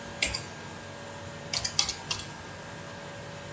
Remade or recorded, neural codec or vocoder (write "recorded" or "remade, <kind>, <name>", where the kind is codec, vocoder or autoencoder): recorded